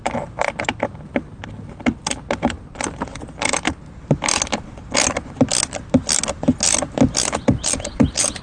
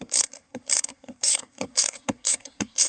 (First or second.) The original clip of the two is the first